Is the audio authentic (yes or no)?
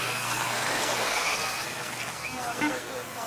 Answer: no